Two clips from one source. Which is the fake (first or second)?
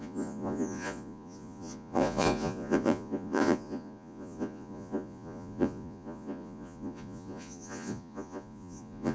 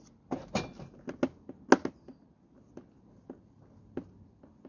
first